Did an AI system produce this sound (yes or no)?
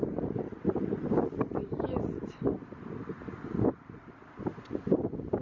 yes